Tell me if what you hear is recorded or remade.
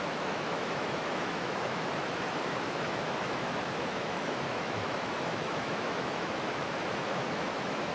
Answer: remade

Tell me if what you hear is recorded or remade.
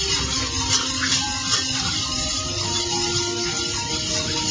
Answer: recorded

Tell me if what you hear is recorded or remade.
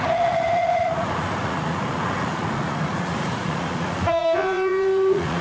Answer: remade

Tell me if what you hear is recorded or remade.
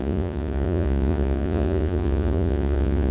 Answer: remade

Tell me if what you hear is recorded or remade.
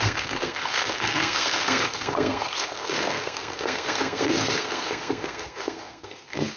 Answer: remade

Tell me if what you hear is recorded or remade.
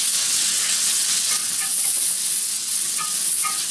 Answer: remade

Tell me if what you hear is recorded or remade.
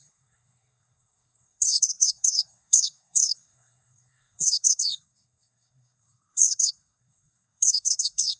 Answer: remade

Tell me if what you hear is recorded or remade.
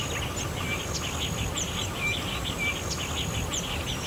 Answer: recorded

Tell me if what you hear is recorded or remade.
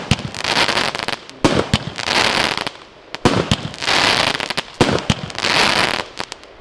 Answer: recorded